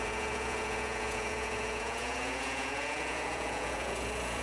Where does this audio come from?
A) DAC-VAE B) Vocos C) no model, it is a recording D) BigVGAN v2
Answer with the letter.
B